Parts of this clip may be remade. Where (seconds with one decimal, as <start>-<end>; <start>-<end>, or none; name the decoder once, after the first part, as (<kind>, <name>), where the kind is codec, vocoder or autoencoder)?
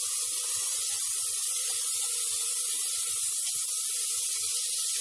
1.5-2.0 (vocoder, BigVGAN v2); 2.4-3.3